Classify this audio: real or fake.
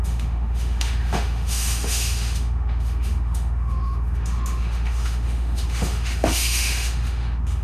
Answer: fake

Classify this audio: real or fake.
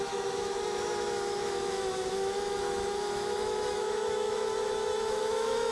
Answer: fake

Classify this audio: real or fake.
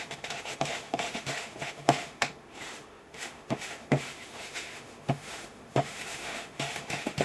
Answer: fake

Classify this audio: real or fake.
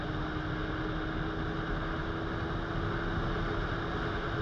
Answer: real